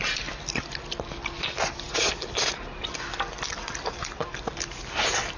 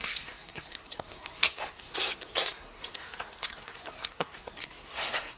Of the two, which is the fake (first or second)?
second